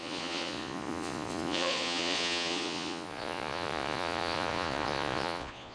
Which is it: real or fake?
fake